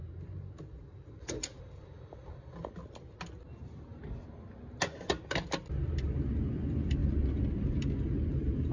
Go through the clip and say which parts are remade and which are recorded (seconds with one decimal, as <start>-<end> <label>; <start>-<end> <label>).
0.0-8.7 recorded